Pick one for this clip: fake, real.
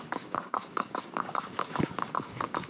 fake